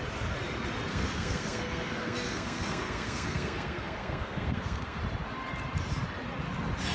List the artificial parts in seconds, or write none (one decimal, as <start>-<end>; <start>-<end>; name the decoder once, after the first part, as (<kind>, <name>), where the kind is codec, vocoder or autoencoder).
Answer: 0.9-5.0 (codec, SNAC)